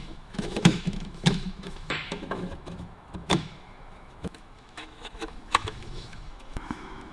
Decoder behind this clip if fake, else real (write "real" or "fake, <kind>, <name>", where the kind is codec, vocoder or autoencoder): fake, autoencoder, DAC-VAE